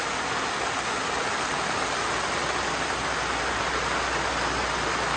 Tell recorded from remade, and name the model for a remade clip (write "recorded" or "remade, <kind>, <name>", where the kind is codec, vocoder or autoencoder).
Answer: recorded